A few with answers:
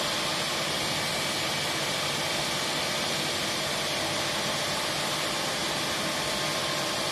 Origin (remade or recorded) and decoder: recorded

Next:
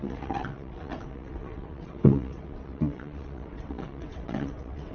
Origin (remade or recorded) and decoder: remade, vocoder, WaveNeXt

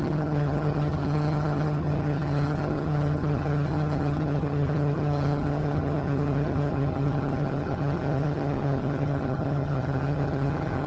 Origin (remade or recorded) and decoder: remade, vocoder, HiFi-GAN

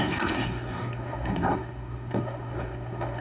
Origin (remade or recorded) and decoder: remade, codec, SNAC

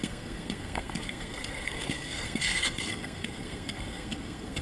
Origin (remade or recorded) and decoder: remade, codec, SNAC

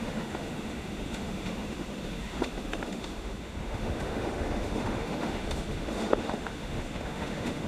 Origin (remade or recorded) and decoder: remade, autoencoder, DAC-VAE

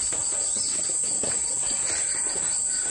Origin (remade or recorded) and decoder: recorded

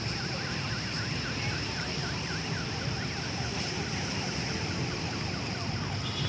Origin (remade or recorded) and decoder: recorded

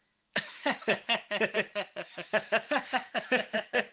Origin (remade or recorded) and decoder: remade, autoencoder, DAC-VAE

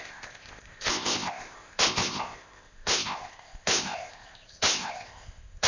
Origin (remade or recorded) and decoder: remade, codec, ZipCodec